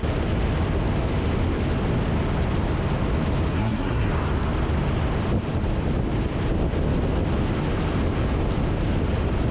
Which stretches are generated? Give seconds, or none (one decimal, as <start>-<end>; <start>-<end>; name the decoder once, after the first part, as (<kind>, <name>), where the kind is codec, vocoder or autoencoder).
3.5-4.1 (codec, SNAC)